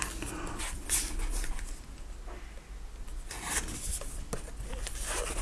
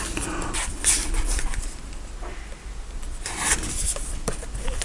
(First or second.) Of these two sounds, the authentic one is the first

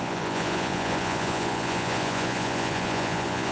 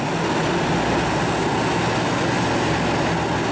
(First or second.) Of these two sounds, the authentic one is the second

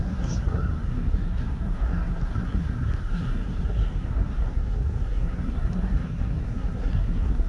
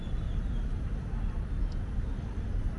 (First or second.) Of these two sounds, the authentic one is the second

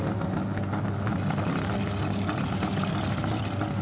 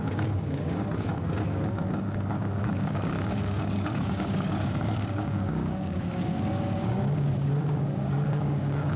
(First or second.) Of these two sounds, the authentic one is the first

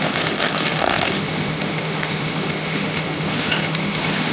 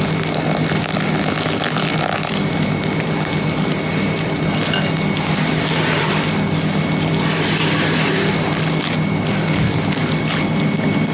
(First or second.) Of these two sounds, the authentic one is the second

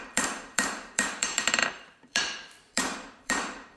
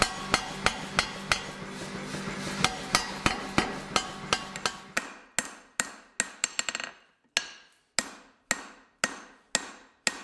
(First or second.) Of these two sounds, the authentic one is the second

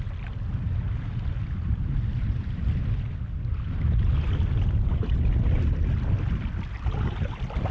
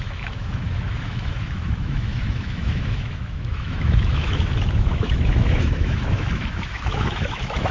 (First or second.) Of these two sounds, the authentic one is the first